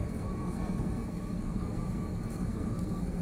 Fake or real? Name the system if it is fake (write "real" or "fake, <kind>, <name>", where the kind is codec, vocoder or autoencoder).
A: fake, codec, SNAC